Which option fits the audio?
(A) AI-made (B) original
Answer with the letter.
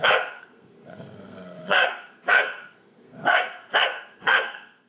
A